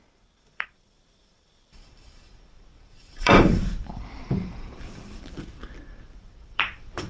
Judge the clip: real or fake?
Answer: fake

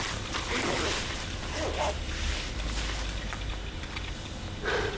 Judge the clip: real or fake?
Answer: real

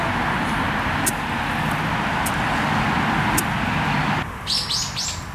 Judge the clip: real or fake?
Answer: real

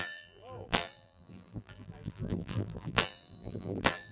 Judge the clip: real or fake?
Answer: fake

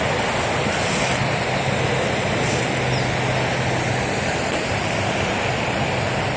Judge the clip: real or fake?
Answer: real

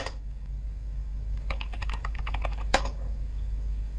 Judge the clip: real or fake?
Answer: fake